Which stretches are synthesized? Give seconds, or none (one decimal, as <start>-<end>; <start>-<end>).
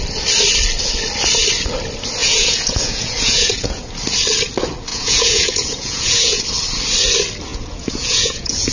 2.2-3.9; 4.9-6.4; 7.5-8.7